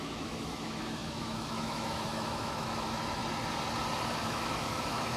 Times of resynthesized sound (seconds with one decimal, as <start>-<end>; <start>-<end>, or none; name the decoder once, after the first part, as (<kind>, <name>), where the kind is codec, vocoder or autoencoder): 0.0-3.2 (autoencoder, DAC-VAE); 4.1-5.2